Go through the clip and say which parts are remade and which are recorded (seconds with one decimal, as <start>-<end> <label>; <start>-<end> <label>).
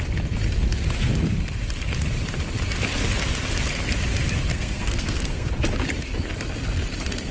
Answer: 0.0-4.5 recorded; 4.5-5.5 remade; 5.5-7.3 recorded